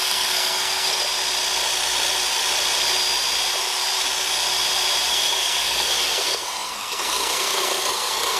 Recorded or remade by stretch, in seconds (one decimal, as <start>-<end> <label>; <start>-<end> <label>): 0.0-1.0 remade; 1.0-5.1 recorded; 5.1-8.4 remade